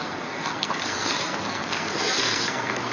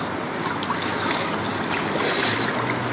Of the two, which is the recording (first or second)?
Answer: second